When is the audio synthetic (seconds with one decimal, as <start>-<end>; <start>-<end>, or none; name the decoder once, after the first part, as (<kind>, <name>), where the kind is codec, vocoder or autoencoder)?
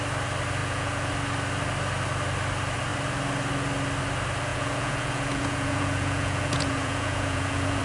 0.6-1.1 (vocoder, Vocos); 4.5-7.8